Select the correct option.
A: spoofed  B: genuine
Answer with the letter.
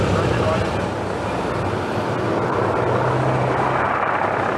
B